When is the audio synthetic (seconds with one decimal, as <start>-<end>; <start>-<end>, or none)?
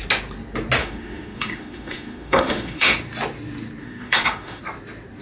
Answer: 0.8-2.9; 3.8-4.6